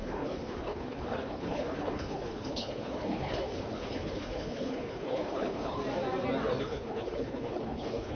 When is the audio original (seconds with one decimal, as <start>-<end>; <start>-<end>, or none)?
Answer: 5.8-6.6